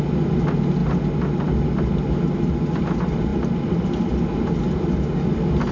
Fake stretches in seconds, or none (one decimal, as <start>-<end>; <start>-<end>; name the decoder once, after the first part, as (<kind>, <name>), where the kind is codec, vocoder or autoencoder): none

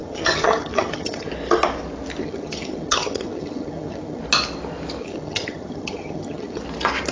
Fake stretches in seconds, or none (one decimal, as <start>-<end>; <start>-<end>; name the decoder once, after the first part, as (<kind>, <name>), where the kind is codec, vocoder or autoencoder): 0.0-1.3 (vocoder, HiFi-GAN); 2.2-4.2; 5.0-6.6

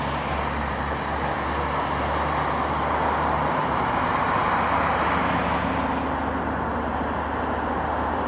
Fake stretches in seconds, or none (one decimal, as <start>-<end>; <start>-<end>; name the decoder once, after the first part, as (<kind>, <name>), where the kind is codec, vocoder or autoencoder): none

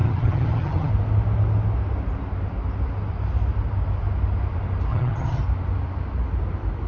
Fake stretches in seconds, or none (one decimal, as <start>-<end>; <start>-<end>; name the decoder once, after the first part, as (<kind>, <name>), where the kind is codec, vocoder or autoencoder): 0.0-0.9 (vocoder, HiFi-GAN); 4.9-5.4

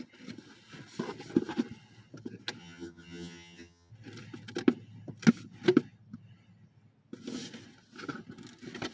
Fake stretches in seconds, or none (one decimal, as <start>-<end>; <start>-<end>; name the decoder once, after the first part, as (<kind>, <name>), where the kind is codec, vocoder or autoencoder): 2.6-3.9 (vocoder, HiFi-GAN)

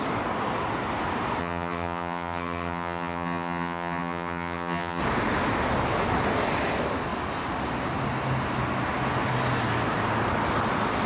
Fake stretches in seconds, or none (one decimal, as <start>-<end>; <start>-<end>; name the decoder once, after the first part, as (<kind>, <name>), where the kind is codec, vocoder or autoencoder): 1.4-5.0 (vocoder, HiFi-GAN)

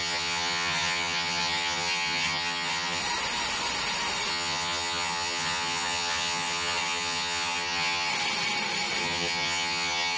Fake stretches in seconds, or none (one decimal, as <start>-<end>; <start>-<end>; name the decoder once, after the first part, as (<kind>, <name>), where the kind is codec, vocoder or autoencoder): 0.0-3.0 (vocoder, HiFi-GAN); 4.3-8.1; 9.0-10.2